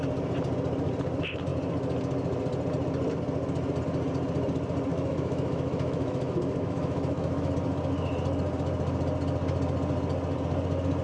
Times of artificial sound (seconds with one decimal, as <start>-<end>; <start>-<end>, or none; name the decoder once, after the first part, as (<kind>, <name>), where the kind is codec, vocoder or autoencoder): 4.9-7.5 (autoencoder, DAC-VAE)